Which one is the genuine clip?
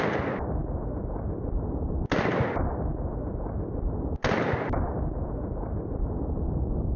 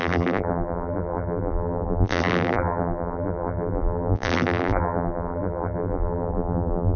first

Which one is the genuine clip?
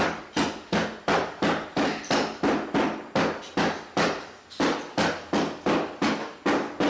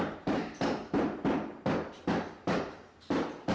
first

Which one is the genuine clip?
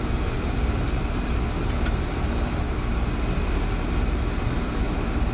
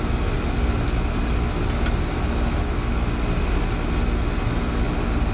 second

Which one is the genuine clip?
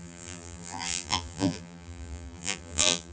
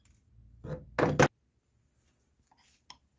second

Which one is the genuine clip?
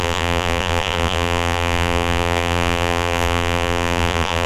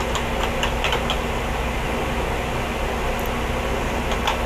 second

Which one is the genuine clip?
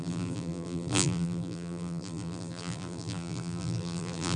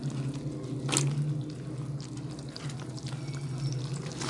second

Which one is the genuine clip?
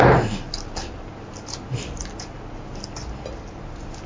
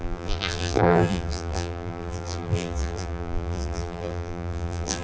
first